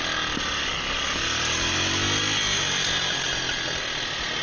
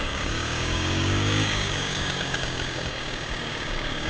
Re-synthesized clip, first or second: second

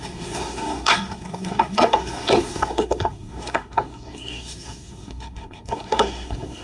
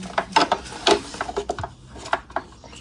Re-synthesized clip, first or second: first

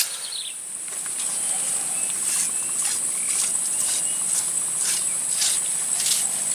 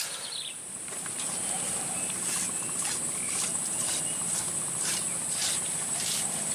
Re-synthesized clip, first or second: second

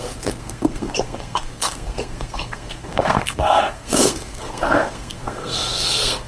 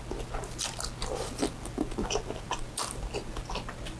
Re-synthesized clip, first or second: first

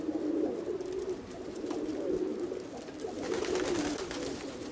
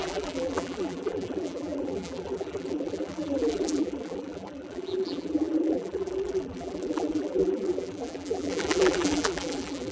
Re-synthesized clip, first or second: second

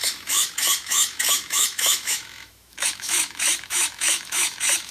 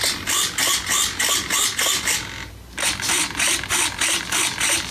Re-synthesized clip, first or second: first